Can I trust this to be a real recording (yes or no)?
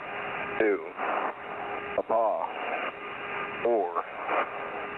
yes